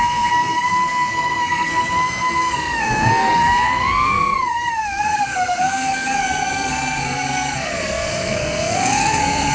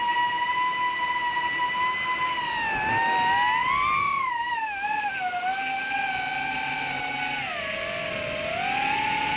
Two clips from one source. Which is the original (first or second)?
second